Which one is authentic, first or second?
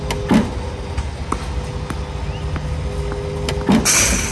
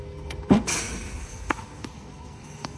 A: first